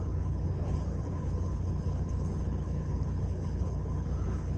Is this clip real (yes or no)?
no